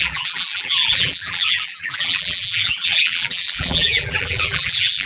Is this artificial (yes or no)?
yes